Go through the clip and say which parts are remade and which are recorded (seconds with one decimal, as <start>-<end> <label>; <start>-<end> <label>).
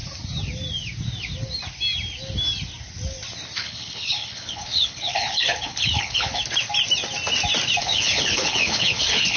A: 0.0-3.6 recorded; 3.6-6.4 remade; 6.4-7.8 recorded; 7.8-9.4 remade